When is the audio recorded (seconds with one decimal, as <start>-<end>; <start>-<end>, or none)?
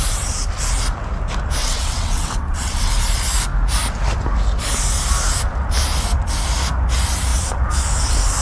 0.0-1.6; 2.9-8.4